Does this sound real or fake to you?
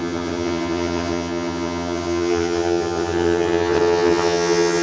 fake